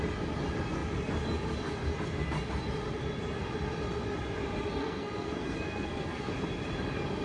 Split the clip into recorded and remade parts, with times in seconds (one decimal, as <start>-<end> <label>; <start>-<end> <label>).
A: 0.0-4.8 recorded; 4.8-6.3 remade; 6.3-7.2 recorded